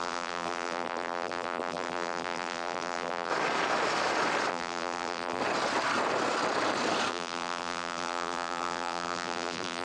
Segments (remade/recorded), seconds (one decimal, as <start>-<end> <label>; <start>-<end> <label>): 0.0-3.3 remade; 3.3-4.5 recorded; 4.5-5.4 remade; 5.4-7.1 recorded; 7.1-9.8 remade